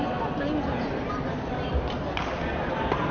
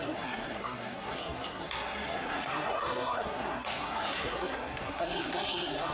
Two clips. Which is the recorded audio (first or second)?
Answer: first